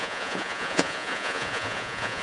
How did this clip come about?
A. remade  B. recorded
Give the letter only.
A